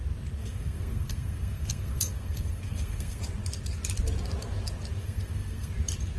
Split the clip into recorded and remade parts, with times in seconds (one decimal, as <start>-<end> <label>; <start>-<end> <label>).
0.0-0.4 recorded; 0.4-3.2 remade; 3.2-5.0 recorded; 5.0-5.7 remade; 5.7-6.2 recorded